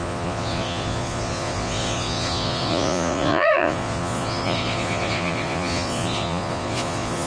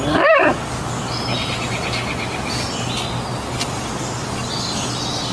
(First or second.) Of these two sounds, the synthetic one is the first